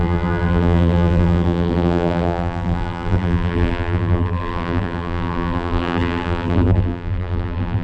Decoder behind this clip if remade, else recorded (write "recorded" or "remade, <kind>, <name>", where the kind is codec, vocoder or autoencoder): remade, vocoder, BigVGAN v2